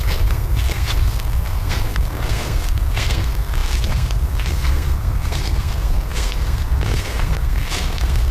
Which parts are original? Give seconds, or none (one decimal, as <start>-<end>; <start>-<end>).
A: none